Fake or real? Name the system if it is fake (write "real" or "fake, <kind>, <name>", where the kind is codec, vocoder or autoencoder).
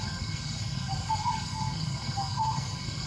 fake, codec, SNAC